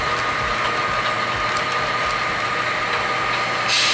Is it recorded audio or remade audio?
recorded